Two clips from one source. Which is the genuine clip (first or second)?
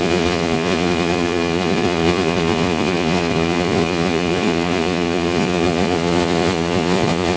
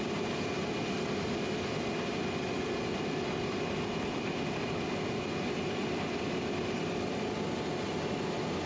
second